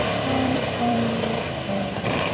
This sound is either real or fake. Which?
fake